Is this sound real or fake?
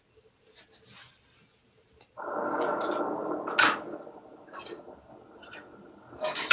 real